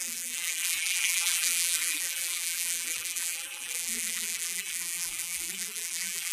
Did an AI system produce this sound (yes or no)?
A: yes